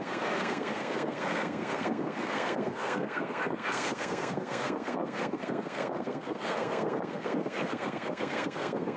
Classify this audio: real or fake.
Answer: fake